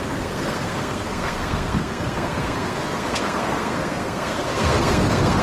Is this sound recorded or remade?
remade